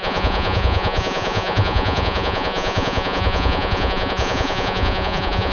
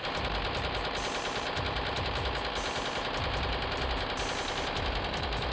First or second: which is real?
second